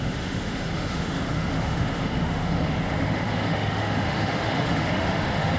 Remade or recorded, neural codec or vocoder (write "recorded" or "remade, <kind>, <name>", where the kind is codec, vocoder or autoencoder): remade, autoencoder, DAC-VAE